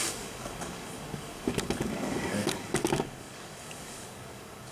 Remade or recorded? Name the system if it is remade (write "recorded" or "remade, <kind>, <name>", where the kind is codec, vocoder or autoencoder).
remade, codec, DAC